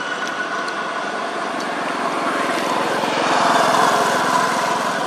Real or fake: real